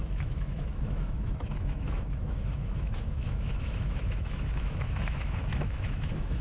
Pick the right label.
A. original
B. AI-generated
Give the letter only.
B